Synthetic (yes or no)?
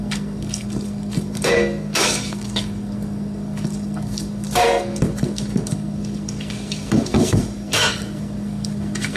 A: yes